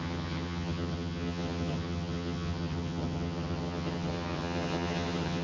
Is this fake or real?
fake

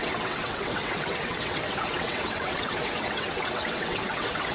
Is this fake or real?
fake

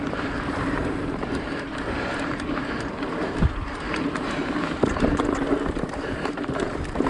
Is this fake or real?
fake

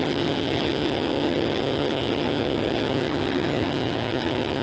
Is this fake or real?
fake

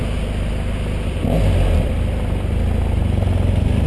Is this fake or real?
real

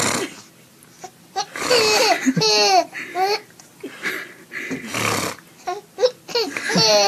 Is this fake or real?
real